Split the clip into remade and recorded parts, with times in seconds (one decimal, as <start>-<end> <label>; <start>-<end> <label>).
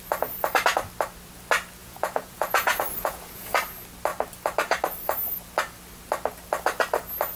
0.0-1.8 recorded; 1.8-3.5 remade; 3.5-7.3 recorded